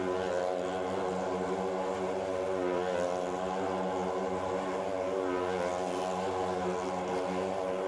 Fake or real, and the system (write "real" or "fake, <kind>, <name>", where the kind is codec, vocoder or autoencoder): real